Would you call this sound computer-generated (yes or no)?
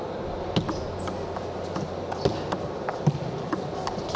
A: no